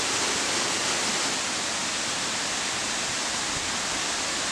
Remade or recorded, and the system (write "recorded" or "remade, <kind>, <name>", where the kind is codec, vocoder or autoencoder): recorded